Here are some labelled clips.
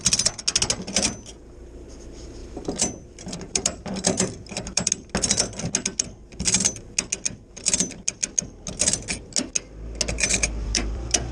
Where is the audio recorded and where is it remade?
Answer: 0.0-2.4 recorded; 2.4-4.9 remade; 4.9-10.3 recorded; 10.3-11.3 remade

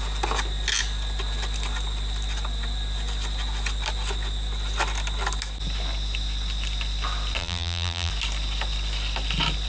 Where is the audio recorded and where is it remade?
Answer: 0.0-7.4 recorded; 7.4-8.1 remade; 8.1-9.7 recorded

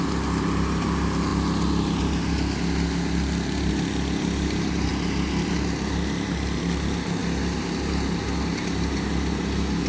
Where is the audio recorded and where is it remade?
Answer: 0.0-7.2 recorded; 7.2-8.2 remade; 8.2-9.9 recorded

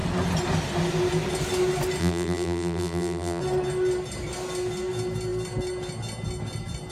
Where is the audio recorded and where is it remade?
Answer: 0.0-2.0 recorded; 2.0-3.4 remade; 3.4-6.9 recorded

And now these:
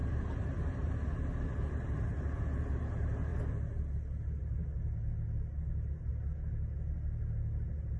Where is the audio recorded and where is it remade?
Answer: 0.0-0.9 remade; 0.9-8.0 recorded

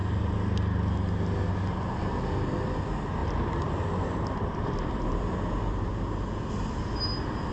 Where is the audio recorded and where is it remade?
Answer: 0.0-3.2 recorded; 3.2-5.9 remade; 5.9-7.5 recorded